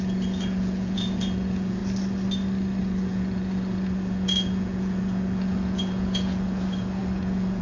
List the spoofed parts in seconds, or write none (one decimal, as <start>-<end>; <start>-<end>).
0.0-1.8; 2.8-7.6